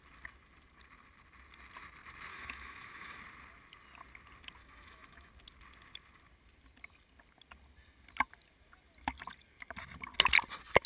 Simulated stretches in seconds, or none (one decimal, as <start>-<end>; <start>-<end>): 2.3-3.2; 4.6-5.3